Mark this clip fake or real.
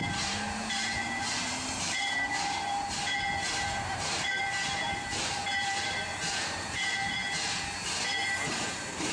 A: fake